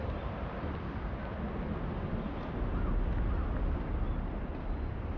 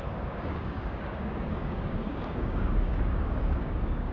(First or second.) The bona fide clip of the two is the first